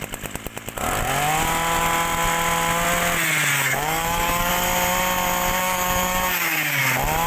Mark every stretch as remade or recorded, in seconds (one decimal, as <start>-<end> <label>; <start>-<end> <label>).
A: 0.0-3.5 recorded; 3.5-4.5 remade; 4.5-5.6 recorded; 5.6-6.8 remade; 6.8-7.3 recorded